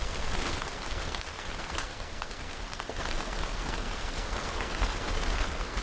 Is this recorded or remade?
remade